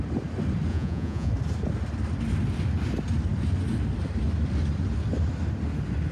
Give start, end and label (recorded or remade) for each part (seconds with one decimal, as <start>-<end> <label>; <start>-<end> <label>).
0.0-0.7 recorded; 0.7-1.3 remade; 1.3-6.1 recorded